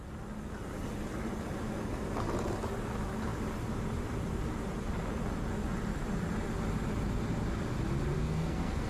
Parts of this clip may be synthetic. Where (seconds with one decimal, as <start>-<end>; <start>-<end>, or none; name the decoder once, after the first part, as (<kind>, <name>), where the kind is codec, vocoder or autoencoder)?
8.1-8.9 (codec, SNAC)